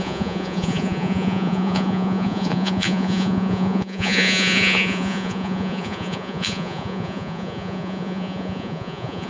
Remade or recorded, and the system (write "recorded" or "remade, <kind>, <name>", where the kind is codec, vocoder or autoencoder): remade, vocoder, Vocos